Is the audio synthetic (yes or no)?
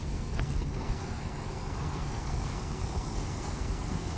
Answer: yes